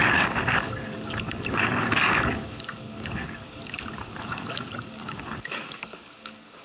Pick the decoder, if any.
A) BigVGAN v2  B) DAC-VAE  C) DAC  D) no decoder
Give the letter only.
C